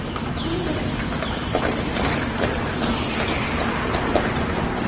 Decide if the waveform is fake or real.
real